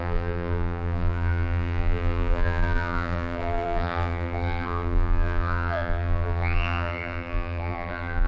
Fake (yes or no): yes